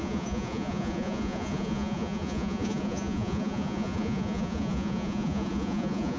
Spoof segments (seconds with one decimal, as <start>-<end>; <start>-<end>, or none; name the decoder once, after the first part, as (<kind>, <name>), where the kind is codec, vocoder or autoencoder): 0.0-6.2 (vocoder, Vocos)